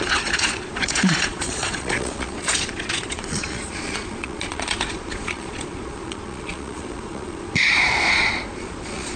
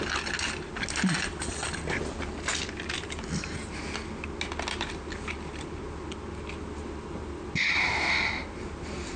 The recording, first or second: second